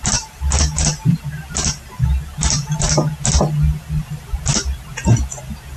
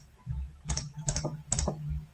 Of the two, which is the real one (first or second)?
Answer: first